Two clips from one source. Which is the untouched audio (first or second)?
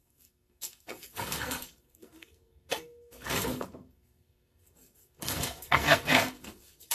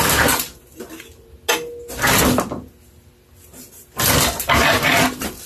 second